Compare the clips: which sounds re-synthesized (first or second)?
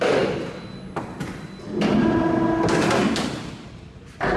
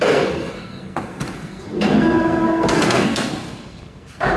second